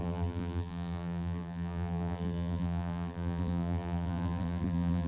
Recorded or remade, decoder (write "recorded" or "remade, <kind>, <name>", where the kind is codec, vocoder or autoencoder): remade, vocoder, BigVGAN v2